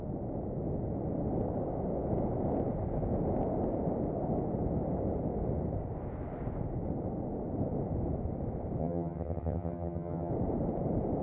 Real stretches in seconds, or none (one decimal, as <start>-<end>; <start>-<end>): 0.0-8.8; 10.3-11.2